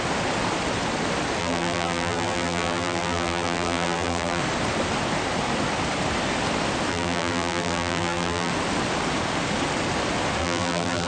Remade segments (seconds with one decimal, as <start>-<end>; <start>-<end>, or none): 1.4-4.4; 6.9-8.5; 10.4-11.1

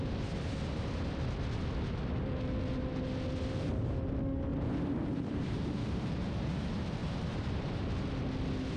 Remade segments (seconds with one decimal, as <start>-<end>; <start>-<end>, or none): 4.5-6.5; 7.0-7.9

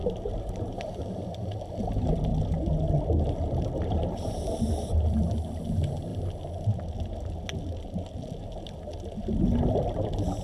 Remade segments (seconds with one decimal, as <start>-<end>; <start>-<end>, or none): 0.0-1.0

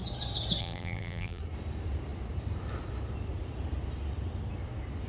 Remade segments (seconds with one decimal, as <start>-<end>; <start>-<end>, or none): 0.6-1.4